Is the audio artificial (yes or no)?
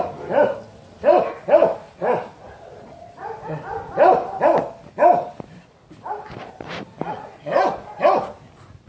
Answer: no